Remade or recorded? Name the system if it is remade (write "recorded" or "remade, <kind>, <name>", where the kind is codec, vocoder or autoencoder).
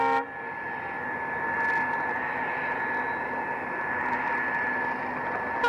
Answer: recorded